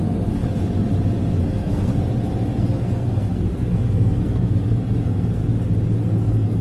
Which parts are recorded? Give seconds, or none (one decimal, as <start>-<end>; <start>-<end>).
0.4-1.4; 1.9-2.6; 5.4-6.0